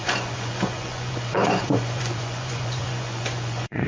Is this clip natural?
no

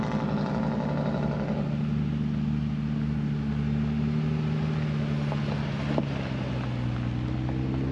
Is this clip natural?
yes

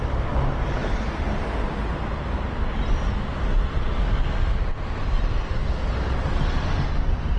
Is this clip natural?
yes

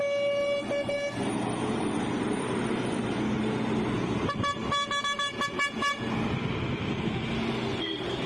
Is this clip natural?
yes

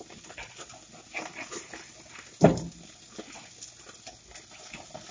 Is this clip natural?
yes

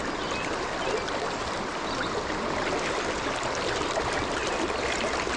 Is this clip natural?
yes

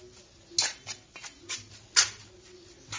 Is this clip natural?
yes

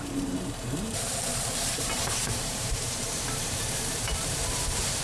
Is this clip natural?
no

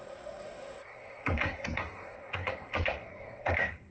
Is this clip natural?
no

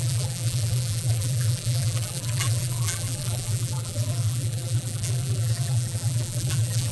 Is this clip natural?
no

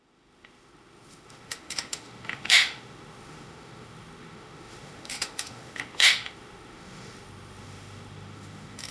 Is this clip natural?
no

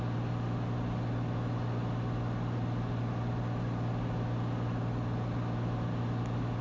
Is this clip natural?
yes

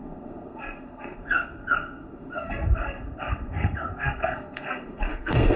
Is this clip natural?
no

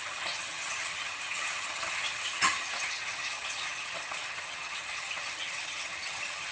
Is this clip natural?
no